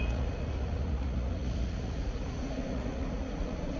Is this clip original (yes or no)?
no